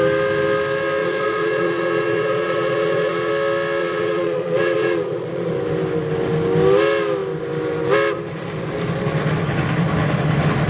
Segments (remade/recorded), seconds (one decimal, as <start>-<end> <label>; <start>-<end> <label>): 0.0-1.0 recorded; 1.0-3.3 remade; 3.3-3.8 recorded; 3.8-5.5 remade; 5.5-10.7 recorded